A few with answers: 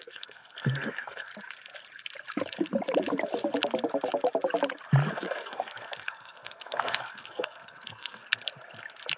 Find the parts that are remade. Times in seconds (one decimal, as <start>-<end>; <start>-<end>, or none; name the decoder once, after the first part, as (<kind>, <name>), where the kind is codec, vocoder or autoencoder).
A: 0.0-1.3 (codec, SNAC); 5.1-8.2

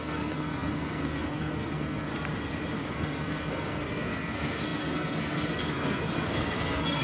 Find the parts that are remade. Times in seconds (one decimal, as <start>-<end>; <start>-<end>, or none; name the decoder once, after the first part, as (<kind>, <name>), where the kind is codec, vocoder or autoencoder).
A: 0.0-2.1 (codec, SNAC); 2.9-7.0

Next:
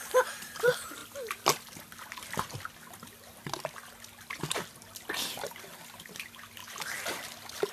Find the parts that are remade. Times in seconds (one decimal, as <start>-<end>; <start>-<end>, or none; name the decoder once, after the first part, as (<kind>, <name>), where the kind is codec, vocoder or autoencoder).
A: none

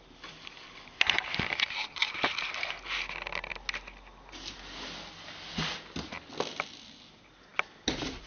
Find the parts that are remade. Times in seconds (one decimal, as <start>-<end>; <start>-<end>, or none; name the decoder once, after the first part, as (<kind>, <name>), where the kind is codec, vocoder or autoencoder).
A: none

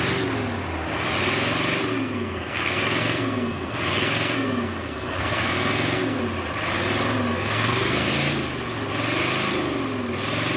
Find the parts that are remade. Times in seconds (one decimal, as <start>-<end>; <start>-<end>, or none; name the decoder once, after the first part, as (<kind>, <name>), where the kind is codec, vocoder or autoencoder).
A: 1.9-6.2 (codec, SNAC); 7.3-8.1

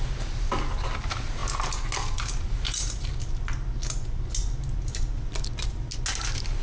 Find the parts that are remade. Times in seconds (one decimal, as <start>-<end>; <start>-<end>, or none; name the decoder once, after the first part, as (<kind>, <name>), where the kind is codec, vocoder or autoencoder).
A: none